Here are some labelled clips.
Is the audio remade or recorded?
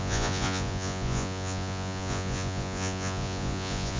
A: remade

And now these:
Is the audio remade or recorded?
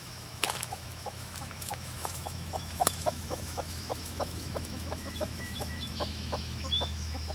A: remade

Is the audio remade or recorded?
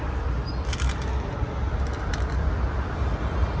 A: recorded